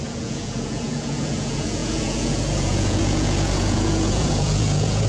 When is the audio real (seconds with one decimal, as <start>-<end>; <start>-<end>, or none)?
none